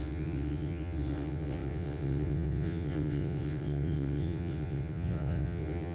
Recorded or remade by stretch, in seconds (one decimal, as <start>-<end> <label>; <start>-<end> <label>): 0.0-5.9 remade